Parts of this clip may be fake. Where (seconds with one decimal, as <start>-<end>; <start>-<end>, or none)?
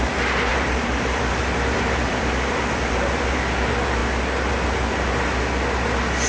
0.5-3.4